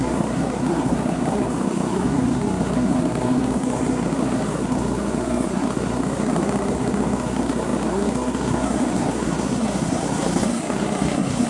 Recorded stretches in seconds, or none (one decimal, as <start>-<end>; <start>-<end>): none